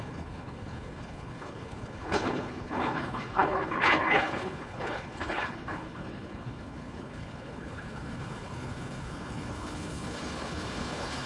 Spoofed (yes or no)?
yes